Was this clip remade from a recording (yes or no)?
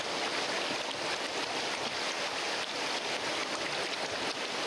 no